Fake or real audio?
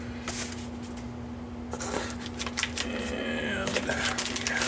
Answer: real